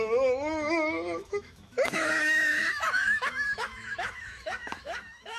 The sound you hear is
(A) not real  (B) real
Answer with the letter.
A